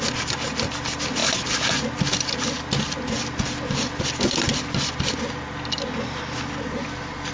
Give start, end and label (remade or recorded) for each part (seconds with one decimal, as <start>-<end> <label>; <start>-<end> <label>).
0.0-7.3 recorded